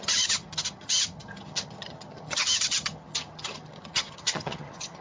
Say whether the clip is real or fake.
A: fake